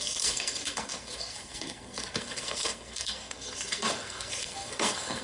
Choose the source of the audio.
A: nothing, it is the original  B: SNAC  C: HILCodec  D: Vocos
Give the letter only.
B